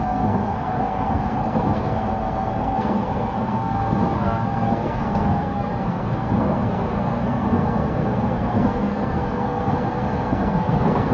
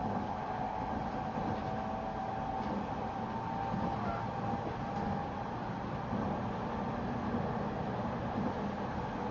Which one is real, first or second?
second